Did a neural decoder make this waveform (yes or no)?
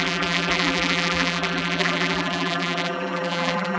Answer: yes